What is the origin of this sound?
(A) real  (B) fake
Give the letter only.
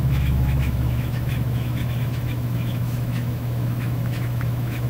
B